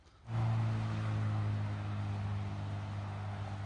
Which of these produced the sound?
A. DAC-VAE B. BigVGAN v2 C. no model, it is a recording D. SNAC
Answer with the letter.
C